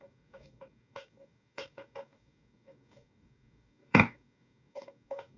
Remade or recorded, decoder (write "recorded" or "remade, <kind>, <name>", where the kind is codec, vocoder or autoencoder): remade, codec, DAC